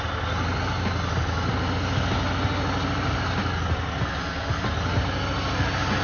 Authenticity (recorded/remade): recorded